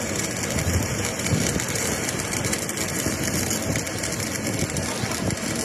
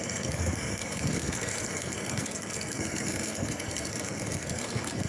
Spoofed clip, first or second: second